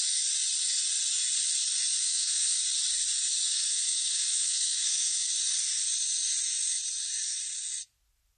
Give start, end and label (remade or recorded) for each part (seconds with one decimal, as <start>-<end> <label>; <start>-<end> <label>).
0.0-2.0 recorded; 2.0-2.6 remade; 2.6-3.5 recorded; 3.5-5.3 remade; 5.3-8.4 recorded